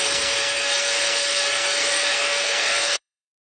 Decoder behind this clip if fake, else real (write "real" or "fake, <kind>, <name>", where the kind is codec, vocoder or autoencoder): fake, codec, SNAC